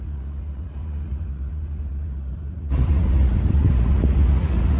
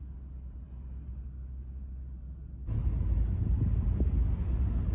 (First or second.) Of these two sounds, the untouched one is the second